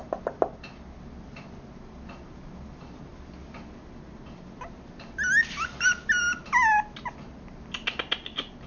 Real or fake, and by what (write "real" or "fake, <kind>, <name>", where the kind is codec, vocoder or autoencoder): real